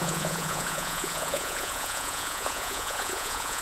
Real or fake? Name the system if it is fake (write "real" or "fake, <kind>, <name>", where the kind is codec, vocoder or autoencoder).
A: fake, vocoder, Vocos